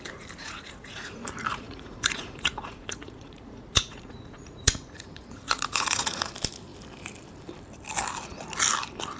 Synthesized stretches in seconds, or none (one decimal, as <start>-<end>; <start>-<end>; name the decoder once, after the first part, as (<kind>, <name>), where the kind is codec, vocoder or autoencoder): 0.4-1.1 (vocoder, Vocos); 1.5-6.3